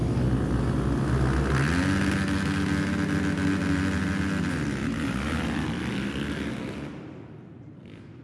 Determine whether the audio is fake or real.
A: real